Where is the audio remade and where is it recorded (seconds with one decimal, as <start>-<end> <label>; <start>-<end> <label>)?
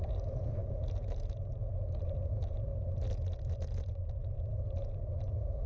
0.0-2.7 remade; 2.7-3.9 recorded; 3.9-5.7 remade